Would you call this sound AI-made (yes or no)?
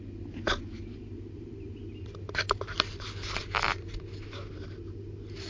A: no